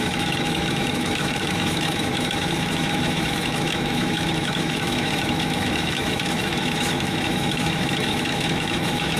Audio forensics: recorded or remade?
remade